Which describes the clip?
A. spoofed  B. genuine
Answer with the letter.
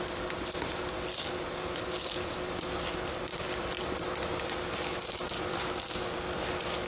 B